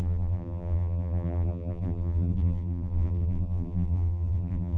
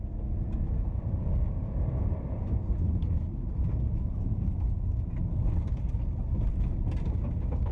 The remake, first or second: first